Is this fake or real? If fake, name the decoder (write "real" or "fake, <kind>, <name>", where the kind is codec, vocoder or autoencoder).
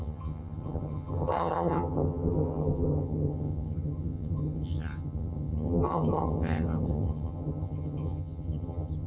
fake, vocoder, HiFi-GAN